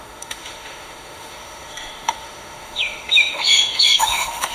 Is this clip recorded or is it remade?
remade